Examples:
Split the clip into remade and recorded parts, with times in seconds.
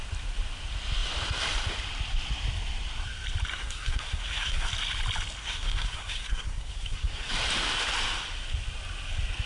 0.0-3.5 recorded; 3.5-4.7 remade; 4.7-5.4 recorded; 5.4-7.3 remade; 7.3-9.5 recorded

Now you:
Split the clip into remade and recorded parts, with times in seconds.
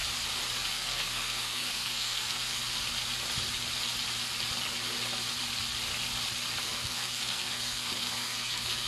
0.0-0.7 recorded; 0.7-2.6 remade; 2.6-6.6 recorded; 6.6-8.9 remade